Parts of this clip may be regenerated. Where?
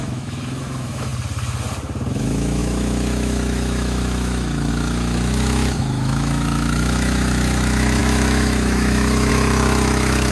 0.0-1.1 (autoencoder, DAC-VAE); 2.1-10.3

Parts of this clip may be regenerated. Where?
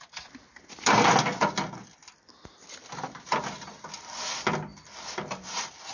none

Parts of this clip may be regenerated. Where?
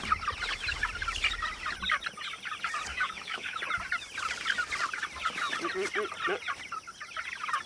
2.9-3.6 (autoencoder, DAC-VAE)